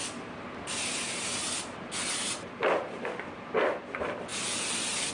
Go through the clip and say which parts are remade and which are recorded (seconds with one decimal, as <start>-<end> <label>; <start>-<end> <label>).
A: 0.0-3.1 remade; 3.1-4.3 recorded; 4.3-5.1 remade